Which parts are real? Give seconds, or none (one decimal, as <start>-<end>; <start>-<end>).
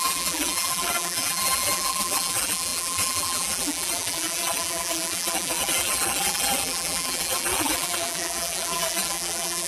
none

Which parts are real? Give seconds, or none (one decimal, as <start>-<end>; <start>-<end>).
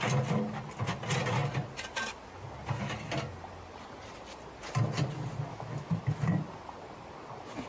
0.0-5.5; 6.0-7.7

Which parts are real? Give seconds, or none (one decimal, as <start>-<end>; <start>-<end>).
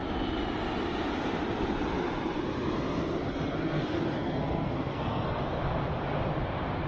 0.0-3.2; 5.4-6.9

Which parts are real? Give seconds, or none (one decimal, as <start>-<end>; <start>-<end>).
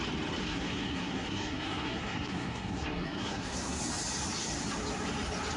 0.0-0.4; 3.8-5.6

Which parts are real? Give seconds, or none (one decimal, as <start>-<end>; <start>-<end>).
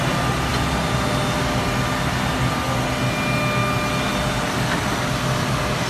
0.0-5.9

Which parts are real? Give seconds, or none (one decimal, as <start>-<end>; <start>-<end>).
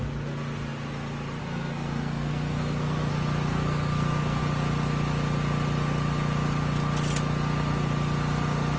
0.0-1.4; 3.1-3.5; 4.4-8.8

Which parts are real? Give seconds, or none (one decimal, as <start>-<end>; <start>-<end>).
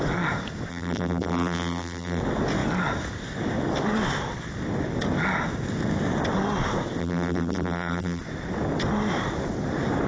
0.0-0.7; 2.2-7.0; 8.2-10.1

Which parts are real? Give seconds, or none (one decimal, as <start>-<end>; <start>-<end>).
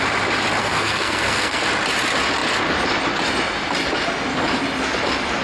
0.0-0.6; 1.6-5.4